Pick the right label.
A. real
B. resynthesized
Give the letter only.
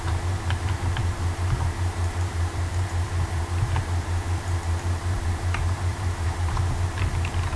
B